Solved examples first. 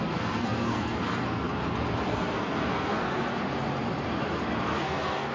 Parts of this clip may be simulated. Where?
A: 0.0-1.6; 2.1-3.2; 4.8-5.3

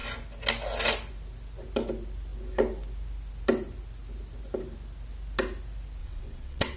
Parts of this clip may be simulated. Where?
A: 6.0-6.8

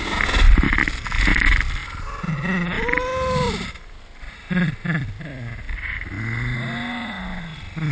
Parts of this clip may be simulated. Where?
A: none

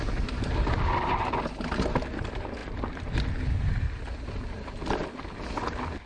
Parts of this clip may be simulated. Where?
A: none